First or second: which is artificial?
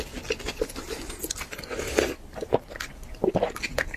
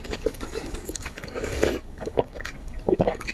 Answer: second